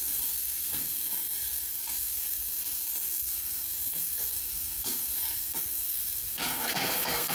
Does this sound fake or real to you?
fake